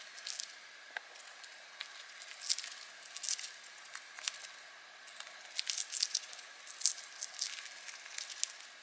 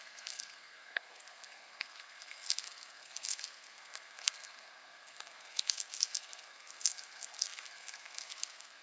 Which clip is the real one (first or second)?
first